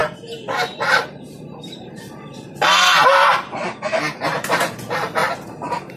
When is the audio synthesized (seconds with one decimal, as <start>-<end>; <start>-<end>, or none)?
0.0-6.0

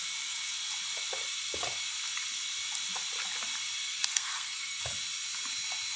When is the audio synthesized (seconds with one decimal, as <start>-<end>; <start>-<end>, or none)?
3.8-4.8

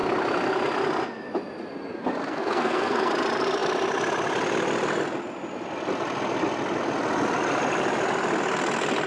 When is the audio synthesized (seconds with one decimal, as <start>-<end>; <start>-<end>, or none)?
2.2-3.1

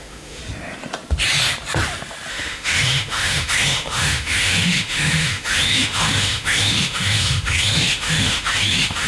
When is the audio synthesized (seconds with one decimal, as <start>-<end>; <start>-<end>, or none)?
0.0-0.4; 2.3-9.1

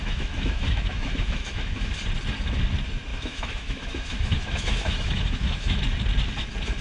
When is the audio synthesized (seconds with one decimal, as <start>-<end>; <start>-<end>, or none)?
0.0-1.9; 3.1-5.8

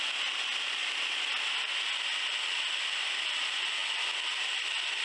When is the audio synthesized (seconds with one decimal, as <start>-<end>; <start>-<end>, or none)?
none